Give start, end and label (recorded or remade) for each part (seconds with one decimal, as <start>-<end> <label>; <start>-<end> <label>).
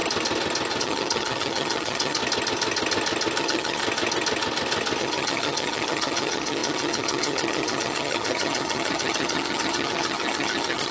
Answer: 0.0-0.8 recorded; 0.8-2.2 remade; 2.2-3.4 recorded; 3.4-3.8 remade; 3.8-5.0 recorded; 5.0-10.9 remade